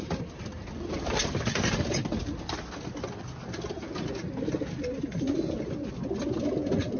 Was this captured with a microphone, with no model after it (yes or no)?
yes